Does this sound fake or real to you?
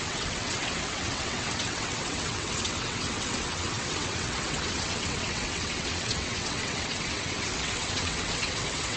fake